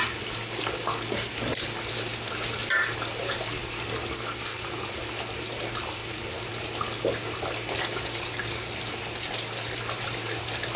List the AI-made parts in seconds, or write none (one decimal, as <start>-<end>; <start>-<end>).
none